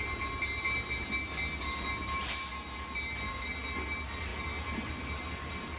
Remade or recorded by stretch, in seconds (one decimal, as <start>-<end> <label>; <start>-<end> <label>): 0.0-5.8 recorded